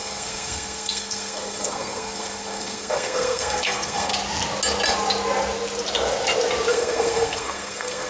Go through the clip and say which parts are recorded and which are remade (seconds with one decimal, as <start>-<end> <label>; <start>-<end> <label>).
0.0-4.1 remade; 4.1-6.7 recorded; 6.7-8.1 remade